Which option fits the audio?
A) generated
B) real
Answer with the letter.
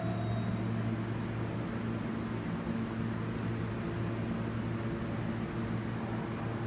B